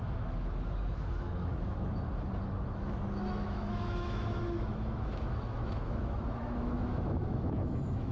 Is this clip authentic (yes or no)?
no